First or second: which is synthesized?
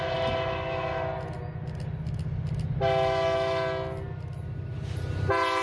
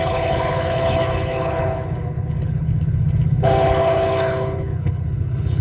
second